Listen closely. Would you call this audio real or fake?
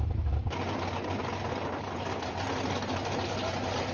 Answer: real